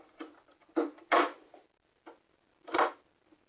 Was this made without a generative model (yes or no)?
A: yes